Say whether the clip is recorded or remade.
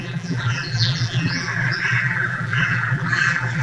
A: remade